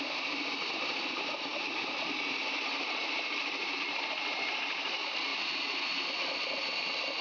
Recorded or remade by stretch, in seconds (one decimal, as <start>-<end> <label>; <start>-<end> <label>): 0.0-5.3 remade; 5.3-7.2 recorded